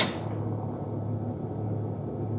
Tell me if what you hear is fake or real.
real